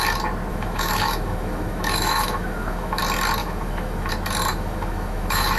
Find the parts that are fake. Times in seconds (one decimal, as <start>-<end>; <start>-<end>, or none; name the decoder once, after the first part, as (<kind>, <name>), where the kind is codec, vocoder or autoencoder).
0.5-3.0 (autoencoder, DAC-VAE); 3.4-4.1; 4.5-5.6